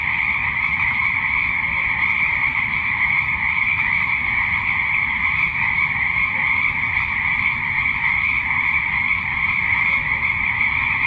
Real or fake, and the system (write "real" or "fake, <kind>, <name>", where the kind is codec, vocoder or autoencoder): fake, vocoder, BigVGAN v2